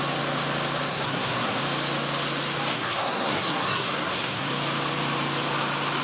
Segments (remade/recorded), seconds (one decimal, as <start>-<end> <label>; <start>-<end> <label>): 0.0-0.9 recorded; 0.9-1.6 remade; 1.6-2.7 recorded; 2.7-4.5 remade; 4.5-6.0 recorded